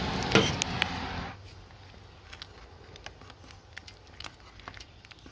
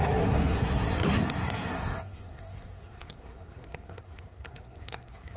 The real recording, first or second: first